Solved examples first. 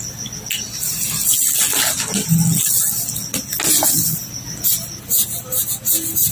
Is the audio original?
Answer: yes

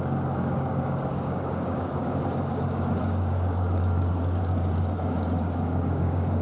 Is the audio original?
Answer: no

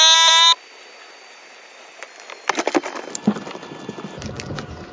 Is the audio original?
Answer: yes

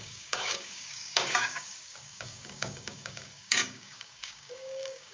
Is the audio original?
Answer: no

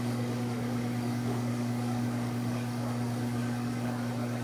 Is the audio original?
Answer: no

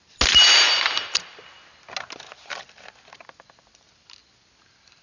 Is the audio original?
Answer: yes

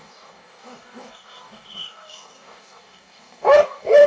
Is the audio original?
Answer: no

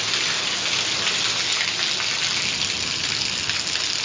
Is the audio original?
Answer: yes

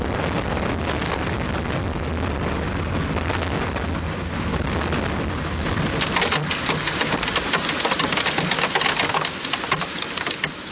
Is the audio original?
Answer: yes